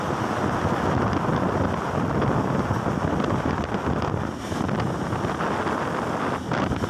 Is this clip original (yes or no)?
yes